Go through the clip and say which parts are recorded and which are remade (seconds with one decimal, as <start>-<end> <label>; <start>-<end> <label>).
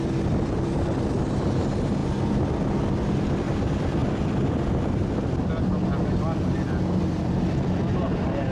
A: 0.0-8.5 remade